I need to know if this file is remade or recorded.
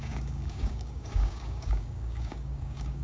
remade